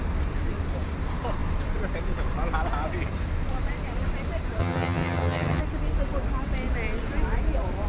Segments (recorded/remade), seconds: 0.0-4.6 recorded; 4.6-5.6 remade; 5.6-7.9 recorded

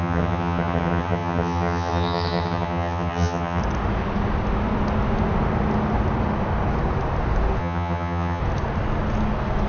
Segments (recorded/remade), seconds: 0.0-3.6 remade; 3.6-7.6 recorded; 7.6-8.4 remade; 8.4-9.7 recorded